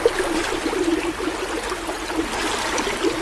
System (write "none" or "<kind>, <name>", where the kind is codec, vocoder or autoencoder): none